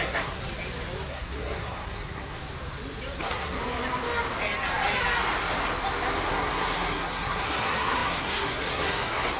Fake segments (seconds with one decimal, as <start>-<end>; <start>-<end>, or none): 0.0-0.4; 1.1-2.4; 3.2-3.6; 6.3-9.4